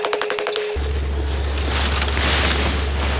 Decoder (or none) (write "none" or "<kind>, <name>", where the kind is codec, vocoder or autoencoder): none